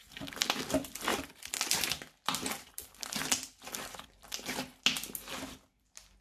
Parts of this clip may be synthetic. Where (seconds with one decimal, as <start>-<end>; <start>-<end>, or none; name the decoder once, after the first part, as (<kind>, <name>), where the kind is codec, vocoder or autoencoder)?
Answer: 1.1-4.8 (vocoder, BigVGAN v2)